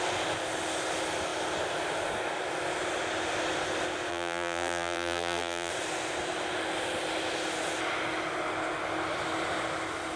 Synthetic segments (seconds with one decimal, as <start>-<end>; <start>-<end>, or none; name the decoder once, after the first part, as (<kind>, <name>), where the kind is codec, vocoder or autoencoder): 4.1-5.7 (vocoder, BigVGAN v2)